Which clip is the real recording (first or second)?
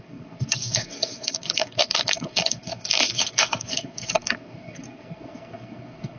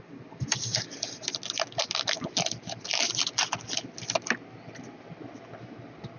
second